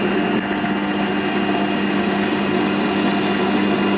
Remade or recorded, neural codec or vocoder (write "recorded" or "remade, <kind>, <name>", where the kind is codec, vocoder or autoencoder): recorded